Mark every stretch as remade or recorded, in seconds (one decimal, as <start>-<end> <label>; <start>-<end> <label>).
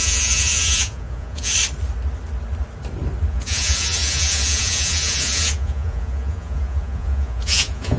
0.0-1.5 remade; 1.5-3.3 recorded; 3.3-8.0 remade